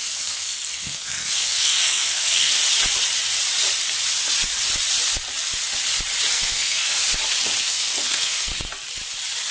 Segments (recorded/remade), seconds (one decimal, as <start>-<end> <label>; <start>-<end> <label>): 0.0-2.6 remade; 2.6-6.3 recorded; 6.3-7.0 remade; 7.0-7.6 recorded; 7.6-8.5 remade; 8.5-9.5 recorded